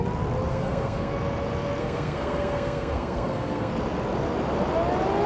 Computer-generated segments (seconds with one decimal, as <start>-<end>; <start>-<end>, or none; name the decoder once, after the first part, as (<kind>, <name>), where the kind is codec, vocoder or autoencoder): 0.5-1.1 (codec, SNAC); 1.8-3.7